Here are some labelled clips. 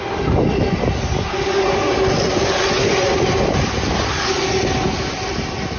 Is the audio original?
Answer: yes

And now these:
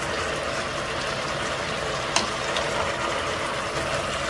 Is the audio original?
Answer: yes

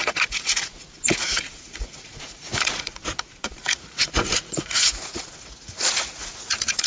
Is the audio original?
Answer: no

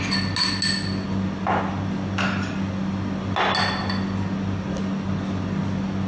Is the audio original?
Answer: yes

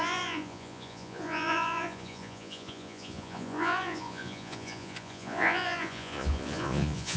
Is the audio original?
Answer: no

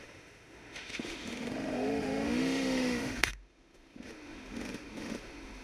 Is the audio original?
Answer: no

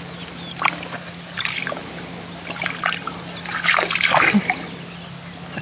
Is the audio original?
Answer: yes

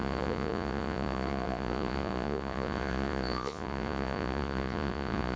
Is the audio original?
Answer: no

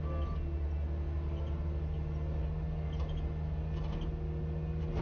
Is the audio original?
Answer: yes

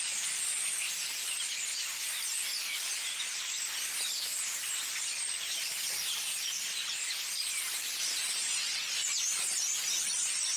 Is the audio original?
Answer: yes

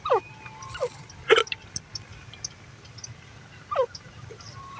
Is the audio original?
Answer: yes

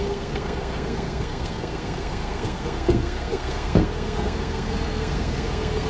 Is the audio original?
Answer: no